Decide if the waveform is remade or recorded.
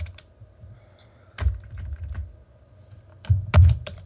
recorded